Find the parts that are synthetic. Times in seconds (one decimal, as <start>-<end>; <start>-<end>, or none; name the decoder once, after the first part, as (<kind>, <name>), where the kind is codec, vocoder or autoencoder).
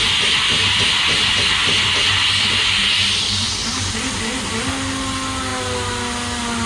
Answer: 3.6-4.1 (vocoder, BigVGAN v2)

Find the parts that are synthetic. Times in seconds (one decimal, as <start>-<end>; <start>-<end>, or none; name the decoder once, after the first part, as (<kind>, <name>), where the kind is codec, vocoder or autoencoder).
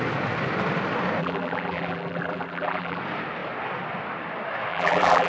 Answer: 1.2-3.0 (vocoder, BigVGAN v2); 4.7-5.3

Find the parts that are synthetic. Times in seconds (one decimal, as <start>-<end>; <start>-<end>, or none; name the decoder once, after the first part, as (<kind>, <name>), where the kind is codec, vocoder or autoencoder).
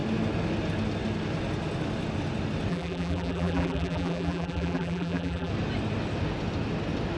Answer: 2.7-5.5 (vocoder, BigVGAN v2)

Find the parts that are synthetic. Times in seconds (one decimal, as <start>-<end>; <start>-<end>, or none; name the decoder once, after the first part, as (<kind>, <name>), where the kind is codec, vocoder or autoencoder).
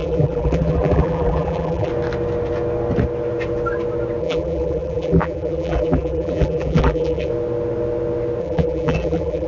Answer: 0.0-1.9 (vocoder, BigVGAN v2); 4.2-7.3; 8.4-9.5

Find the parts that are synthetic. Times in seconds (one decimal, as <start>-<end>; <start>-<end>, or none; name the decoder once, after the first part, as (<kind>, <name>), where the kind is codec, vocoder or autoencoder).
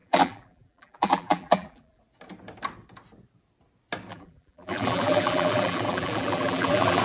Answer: 0.0-2.0 (vocoder, BigVGAN v2); 4.1-7.0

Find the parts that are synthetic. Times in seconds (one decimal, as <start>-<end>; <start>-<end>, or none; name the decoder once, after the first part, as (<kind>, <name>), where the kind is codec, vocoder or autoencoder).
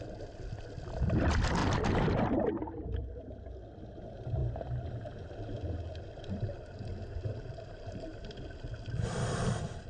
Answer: 0.0-4.4 (vocoder, BigVGAN v2); 6.2-9.9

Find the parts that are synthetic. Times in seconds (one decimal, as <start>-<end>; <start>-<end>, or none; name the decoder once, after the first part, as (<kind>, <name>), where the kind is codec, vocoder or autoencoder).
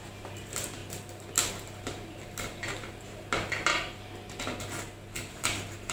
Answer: 0.0-0.8 (vocoder, BigVGAN v2); 1.5-3.7; 5.3-5.9